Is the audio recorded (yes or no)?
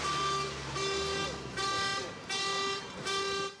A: yes